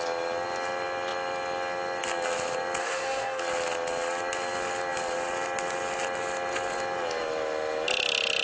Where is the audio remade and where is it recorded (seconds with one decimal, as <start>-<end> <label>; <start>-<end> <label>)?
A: 0.0-2.8 recorded; 2.8-3.4 remade; 3.4-8.4 recorded